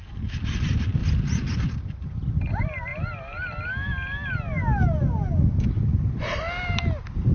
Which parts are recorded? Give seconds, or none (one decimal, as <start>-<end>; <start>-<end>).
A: 0.0-7.3